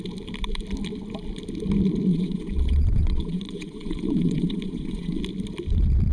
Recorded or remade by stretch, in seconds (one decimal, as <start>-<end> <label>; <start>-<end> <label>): 0.0-2.1 recorded; 2.1-5.2 remade; 5.2-6.1 recorded